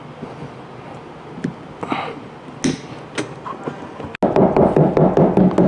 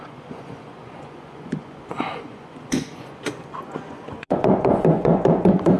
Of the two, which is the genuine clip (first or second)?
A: first